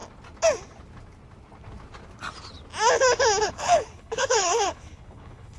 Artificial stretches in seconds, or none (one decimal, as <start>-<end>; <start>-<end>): 3.4-5.6